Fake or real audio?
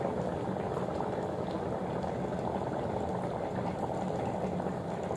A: real